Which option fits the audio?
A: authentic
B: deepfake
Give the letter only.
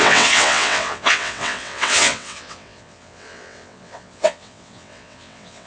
B